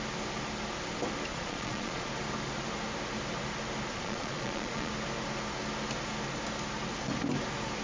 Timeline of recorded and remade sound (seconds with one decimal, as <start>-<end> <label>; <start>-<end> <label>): 0.0-1.3 recorded; 1.3-2.1 remade; 2.1-3.9 recorded; 3.9-4.9 remade; 4.9-7.8 recorded